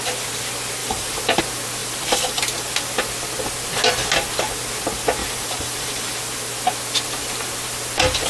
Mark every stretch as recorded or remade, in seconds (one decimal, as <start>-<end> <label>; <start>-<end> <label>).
0.0-0.8 recorded; 0.8-1.4 remade; 1.4-1.8 recorded; 1.8-2.4 remade; 2.4-5.2 recorded; 5.2-6.2 remade; 6.2-8.3 recorded